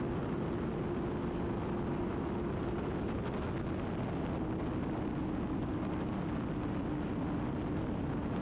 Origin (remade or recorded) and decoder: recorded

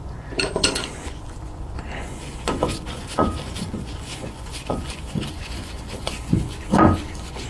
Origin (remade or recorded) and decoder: remade, vocoder, Vocos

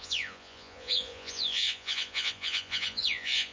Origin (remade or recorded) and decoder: remade, vocoder, Vocos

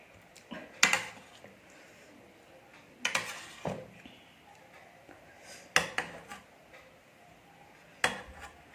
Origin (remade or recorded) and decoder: recorded